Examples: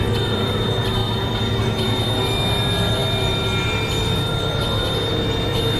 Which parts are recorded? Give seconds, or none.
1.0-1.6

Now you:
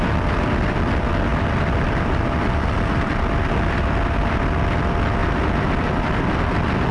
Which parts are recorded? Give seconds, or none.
0.0-1.3; 4.2-5.2; 6.2-6.9

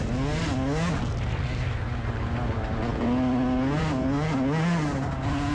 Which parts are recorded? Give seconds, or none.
0.0-5.5

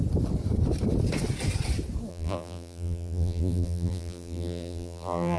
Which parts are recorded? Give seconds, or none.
0.0-2.1

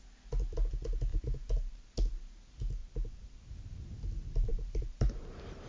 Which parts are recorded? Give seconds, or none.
0.0-1.1; 1.9-2.8; 3.5-4.5; 5.2-5.7

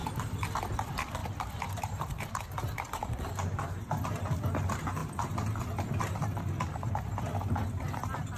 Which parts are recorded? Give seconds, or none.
0.6-1.2; 2.3-8.4